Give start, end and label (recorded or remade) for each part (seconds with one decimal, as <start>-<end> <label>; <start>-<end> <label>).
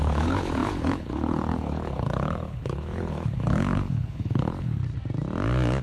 0.0-4.8 remade; 4.8-5.8 recorded